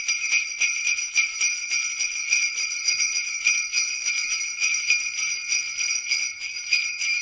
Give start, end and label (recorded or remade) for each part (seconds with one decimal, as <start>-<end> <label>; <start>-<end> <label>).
0.0-0.4 remade; 0.4-1.0 recorded; 1.0-1.8 remade; 1.8-2.5 recorded; 2.5-3.7 remade; 3.7-4.3 recorded; 4.3-5.4 remade; 5.4-6.3 recorded; 6.3-7.2 remade